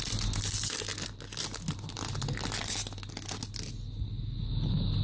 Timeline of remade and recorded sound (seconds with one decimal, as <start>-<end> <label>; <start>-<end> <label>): 0.0-5.0 recorded